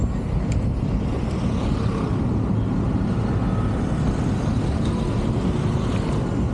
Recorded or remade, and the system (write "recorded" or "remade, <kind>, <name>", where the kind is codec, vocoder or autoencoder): recorded